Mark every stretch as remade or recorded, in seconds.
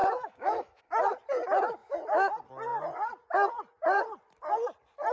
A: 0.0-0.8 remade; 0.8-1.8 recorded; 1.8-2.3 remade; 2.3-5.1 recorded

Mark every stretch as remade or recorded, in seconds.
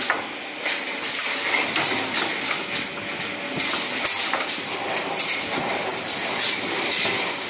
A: 0.0-7.5 recorded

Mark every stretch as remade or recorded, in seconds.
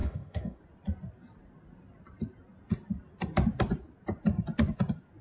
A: 0.0-0.6 remade; 0.6-5.2 recorded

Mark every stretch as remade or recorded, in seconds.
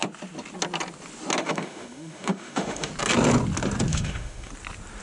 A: 0.0-1.4 recorded; 1.4-2.9 remade; 2.9-3.9 recorded; 3.9-4.5 remade; 4.5-5.0 recorded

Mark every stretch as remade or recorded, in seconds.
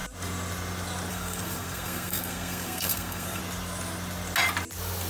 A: 0.0-1.1 recorded; 1.1-3.4 remade; 3.4-5.1 recorded